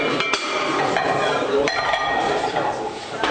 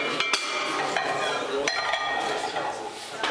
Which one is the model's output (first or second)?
first